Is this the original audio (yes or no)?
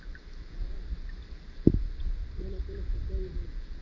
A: no